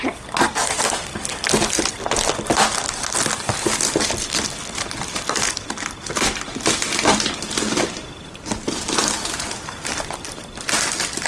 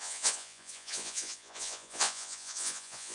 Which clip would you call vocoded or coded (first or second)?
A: second